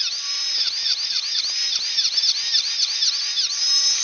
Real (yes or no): yes